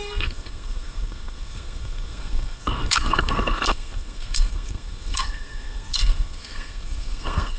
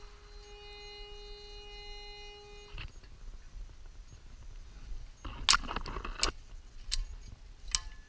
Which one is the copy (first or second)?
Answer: first